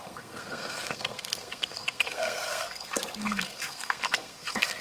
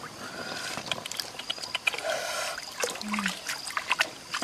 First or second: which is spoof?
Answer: first